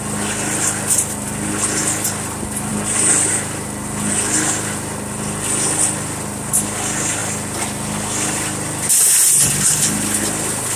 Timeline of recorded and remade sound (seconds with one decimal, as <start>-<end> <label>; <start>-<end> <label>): 0.0-10.8 recorded